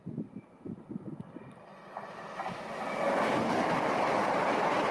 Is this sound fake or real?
real